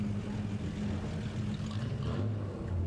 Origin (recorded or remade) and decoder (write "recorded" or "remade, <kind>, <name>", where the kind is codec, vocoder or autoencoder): recorded